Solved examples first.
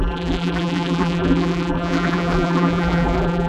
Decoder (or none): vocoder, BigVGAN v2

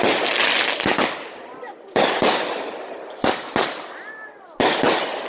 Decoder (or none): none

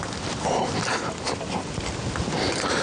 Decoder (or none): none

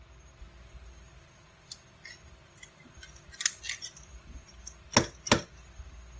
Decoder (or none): none